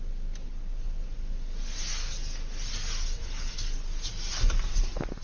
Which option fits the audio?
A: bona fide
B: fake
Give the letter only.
A